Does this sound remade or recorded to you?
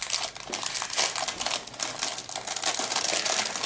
recorded